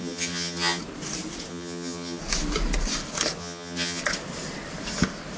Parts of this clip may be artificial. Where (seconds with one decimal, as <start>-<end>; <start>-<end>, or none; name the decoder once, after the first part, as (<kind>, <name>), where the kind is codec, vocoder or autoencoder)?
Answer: 0.0-0.8 (vocoder, HiFi-GAN); 1.5-2.2; 3.4-4.0